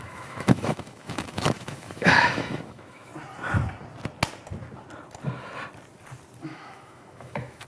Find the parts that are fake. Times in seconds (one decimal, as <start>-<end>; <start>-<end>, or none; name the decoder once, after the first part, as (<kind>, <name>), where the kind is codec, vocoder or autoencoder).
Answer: 0.0-3.1 (autoencoder, DAC-VAE); 6.4-7.7